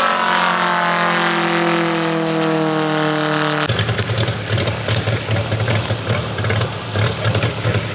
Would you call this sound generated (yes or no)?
no